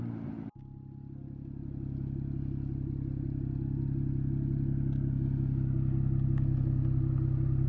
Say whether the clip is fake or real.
real